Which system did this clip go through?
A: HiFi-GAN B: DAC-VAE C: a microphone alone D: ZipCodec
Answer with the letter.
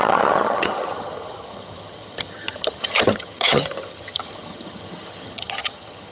A